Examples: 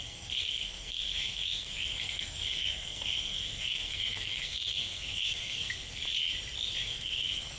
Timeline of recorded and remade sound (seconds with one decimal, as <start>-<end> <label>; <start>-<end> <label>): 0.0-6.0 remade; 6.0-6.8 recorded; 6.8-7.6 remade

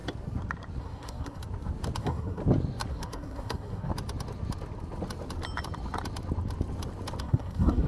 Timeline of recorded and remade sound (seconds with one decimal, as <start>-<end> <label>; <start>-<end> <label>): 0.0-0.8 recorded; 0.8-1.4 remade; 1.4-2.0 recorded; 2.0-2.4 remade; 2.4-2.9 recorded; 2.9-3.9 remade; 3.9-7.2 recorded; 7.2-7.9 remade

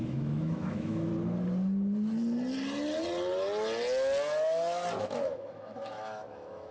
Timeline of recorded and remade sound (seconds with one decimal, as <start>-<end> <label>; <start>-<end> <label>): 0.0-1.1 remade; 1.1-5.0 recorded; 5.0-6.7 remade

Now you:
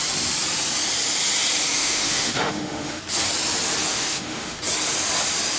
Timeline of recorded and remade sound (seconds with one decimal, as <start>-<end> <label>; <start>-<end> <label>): 0.0-1.8 recorded; 1.8-3.0 remade; 3.0-3.9 recorded; 3.9-4.6 remade; 4.6-5.6 recorded